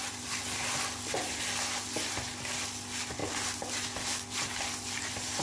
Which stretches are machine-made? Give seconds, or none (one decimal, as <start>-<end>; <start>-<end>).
none